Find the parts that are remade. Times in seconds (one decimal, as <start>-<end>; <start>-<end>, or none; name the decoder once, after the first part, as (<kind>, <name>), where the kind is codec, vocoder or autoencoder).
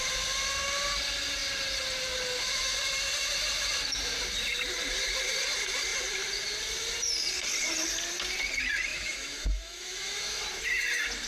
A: 8.9-10.4 (autoencoder, DAC-VAE)